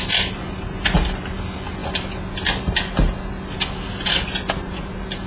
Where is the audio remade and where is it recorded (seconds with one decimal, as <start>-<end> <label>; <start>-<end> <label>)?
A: 0.0-5.3 recorded